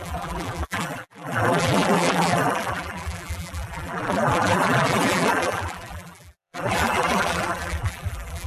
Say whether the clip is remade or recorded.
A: remade